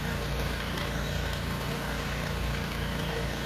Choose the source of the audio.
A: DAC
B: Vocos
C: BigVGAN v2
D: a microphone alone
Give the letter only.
A